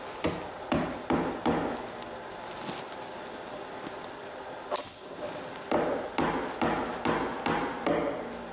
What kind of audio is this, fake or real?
real